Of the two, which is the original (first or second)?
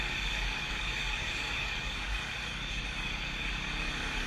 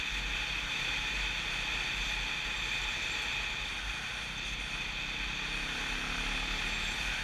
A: second